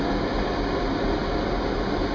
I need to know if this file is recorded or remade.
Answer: recorded